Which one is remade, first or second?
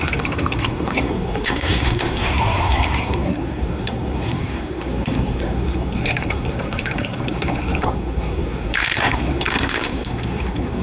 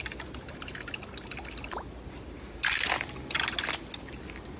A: first